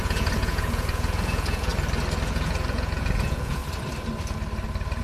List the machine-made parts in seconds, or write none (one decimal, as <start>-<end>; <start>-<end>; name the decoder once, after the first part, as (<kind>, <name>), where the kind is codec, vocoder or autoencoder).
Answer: 0.0-1.7 (vocoder, Vocos); 2.3-3.6